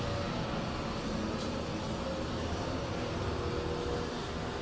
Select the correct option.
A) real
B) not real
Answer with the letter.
A